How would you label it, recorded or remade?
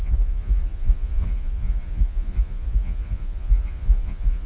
remade